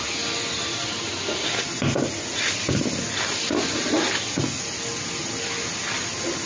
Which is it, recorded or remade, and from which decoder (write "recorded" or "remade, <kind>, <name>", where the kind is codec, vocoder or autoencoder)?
recorded